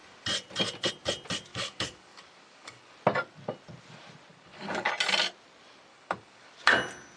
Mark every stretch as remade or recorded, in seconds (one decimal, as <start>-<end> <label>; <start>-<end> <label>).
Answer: 0.0-1.5 recorded; 1.5-2.9 remade; 2.9-4.3 recorded; 4.3-4.9 remade; 4.9-5.9 recorded; 5.9-6.5 remade; 6.5-7.2 recorded